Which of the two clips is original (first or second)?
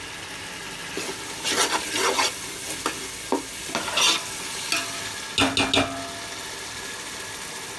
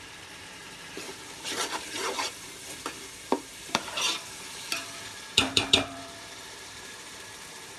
first